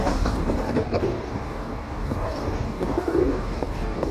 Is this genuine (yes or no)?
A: no